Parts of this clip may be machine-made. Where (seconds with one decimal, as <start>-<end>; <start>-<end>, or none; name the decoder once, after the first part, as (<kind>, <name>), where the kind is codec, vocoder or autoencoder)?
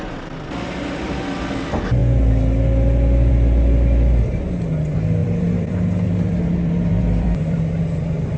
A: 5.2-7.8 (vocoder, BigVGAN v2)